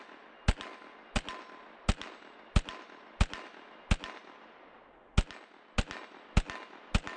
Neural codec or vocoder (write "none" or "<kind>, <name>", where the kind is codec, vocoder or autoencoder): none